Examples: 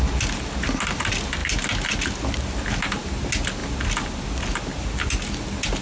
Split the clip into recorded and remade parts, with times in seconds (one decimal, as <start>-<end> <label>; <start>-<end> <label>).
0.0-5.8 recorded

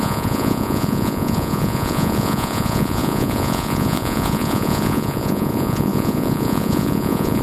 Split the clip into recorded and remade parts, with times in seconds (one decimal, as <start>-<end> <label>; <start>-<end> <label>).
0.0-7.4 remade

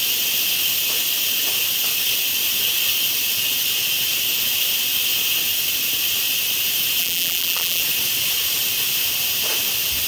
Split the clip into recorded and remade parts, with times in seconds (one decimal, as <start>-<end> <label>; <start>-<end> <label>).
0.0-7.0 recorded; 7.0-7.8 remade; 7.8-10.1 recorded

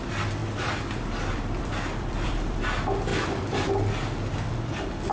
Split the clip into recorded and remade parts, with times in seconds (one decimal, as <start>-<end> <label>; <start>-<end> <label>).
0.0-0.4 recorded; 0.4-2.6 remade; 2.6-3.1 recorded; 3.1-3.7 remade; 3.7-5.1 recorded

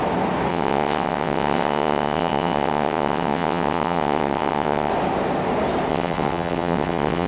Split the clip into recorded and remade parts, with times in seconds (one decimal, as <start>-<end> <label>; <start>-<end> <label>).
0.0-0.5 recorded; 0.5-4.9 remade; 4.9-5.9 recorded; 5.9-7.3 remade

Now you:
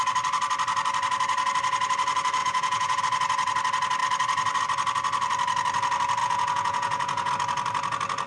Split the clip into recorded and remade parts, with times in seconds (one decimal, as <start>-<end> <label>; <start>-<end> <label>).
0.0-2.4 recorded; 2.4-3.0 remade; 3.0-6.2 recorded; 6.2-7.3 remade; 7.3-8.3 recorded